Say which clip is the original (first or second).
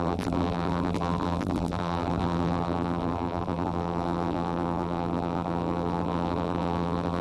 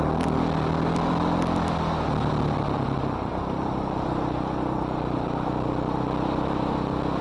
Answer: second